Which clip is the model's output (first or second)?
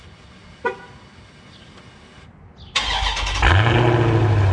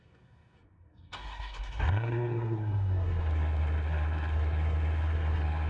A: second